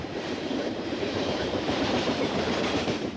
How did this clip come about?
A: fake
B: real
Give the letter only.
A